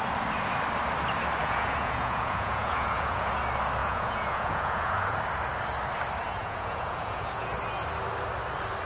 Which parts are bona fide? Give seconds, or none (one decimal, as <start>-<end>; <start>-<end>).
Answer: 0.0-1.4; 3.4-3.8; 5.2-6.4; 7.5-8.9